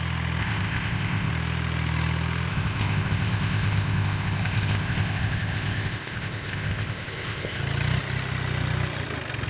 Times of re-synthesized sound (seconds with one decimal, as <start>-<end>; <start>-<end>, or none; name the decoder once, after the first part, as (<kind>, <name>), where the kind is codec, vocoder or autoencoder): 0.4-1.3 (codec, ZipCodec); 2.5-7.6